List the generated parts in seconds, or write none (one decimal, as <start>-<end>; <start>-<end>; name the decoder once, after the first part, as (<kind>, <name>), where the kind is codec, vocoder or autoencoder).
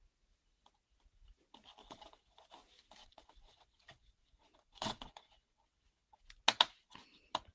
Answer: 1.8-2.4 (vocoder, WaveNeXt); 3.0-6.2